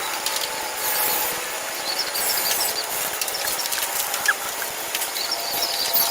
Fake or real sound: real